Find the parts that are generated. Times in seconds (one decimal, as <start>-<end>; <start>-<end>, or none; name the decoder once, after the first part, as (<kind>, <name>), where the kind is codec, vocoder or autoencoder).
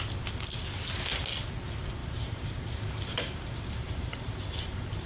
2.0-5.1 (vocoder, BigVGAN v2)